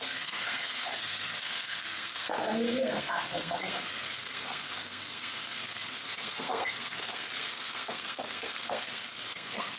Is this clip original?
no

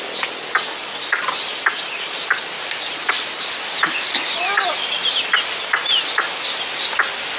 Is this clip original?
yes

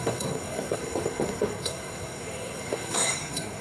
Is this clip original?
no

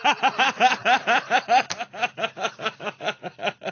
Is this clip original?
yes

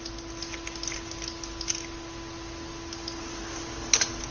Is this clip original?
yes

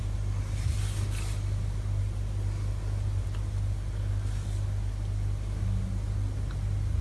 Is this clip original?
yes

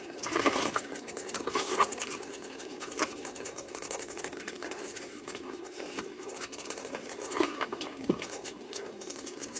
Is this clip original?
no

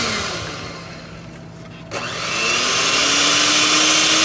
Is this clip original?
yes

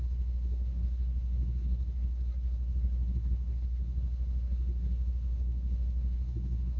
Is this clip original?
no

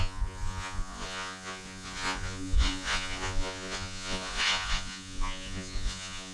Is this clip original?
no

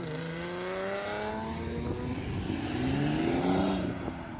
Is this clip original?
yes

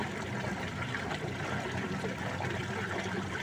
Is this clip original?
yes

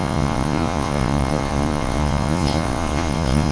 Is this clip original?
no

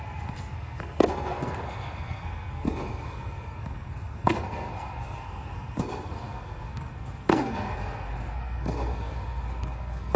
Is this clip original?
no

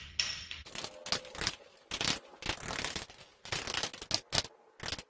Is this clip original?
yes